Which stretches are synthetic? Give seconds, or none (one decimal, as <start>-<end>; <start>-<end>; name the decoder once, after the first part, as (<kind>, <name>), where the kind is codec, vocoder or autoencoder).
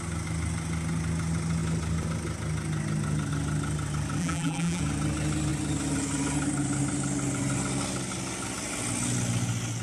4.2-4.8 (vocoder, BigVGAN v2)